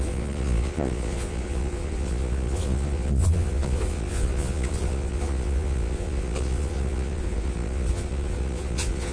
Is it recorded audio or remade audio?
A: remade